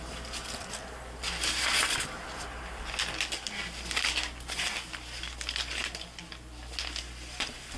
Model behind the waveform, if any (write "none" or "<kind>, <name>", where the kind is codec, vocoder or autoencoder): none